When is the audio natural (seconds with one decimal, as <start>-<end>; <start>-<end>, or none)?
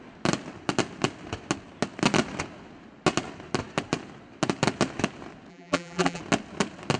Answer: 0.0-5.5; 6.2-7.0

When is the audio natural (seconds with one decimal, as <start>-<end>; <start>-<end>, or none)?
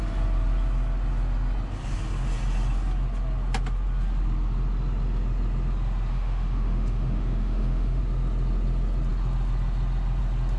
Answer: 0.0-6.1; 8.0-10.6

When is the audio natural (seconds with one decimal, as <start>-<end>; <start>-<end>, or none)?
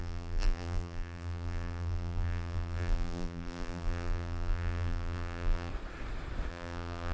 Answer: 5.7-6.5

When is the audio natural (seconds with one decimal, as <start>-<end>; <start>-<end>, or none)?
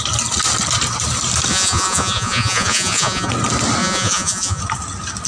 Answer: 0.0-1.5; 3.3-3.8; 4.6-5.3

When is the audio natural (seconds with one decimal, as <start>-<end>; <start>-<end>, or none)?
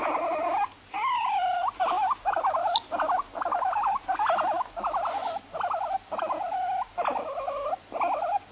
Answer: 4.1-8.5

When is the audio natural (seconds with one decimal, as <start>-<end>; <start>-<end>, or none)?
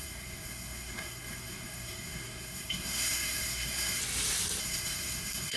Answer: 4.0-4.6